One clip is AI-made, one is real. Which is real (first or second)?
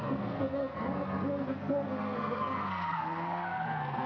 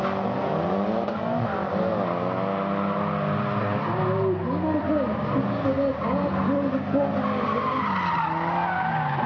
second